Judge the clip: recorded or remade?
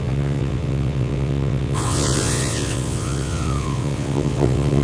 remade